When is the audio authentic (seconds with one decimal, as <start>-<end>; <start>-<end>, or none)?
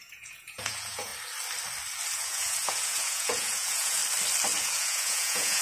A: 1.1-2.1; 4.0-4.6